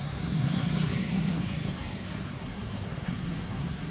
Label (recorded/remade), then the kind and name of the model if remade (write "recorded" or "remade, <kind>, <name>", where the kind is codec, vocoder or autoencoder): remade, codec, SNAC